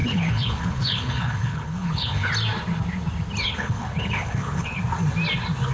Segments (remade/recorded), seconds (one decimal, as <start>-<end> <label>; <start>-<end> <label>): 0.0-2.3 remade; 2.3-3.4 recorded; 3.4-4.8 remade; 4.8-5.7 recorded